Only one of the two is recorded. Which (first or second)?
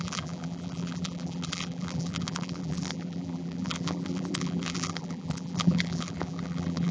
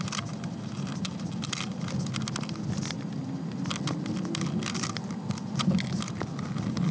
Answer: second